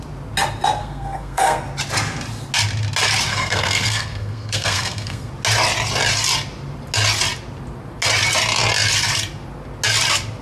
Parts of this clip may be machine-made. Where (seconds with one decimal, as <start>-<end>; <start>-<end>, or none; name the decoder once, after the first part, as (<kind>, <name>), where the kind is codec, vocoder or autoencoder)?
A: 0.8-1.6 (codec, SNAC); 3.3-5.3

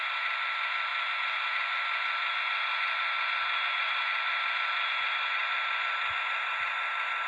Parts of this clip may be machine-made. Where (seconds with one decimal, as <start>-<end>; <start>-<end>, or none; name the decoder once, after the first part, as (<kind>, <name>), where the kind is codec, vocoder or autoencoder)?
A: none

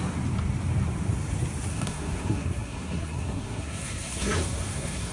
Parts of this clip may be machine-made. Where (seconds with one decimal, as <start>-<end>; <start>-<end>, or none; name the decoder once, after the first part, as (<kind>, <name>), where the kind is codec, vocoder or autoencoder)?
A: 1.7-5.1 (codec, SNAC)

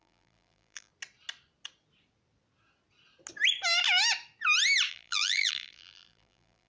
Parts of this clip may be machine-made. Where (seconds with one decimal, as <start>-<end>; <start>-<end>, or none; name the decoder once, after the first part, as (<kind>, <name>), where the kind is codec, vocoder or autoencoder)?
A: 0.0-0.9 (vocoder, BigVGAN v2); 4.9-6.7

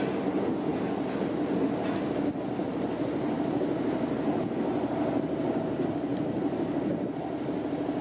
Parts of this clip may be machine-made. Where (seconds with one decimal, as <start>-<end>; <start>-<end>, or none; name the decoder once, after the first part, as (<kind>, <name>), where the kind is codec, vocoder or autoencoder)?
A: none

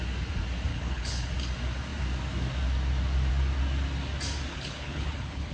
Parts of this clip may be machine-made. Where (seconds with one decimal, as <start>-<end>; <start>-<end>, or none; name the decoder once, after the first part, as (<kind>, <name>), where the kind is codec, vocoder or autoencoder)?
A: 0.7-1.3 (codec, HILCodec); 4.5-5.5

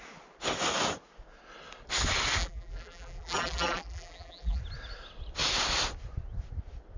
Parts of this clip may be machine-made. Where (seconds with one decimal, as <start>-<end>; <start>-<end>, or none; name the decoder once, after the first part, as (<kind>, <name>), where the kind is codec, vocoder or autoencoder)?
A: 2.4-4.6 (vocoder, BigVGAN v2)